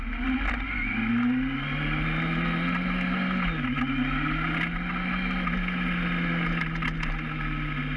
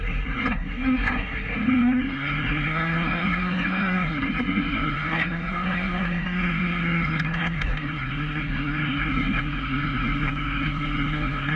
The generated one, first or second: second